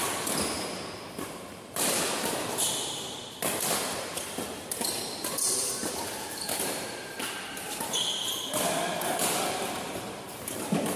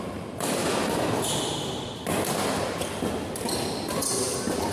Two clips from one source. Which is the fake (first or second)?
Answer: first